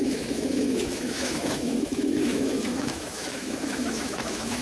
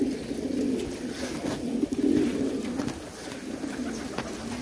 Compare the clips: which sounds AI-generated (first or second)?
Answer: first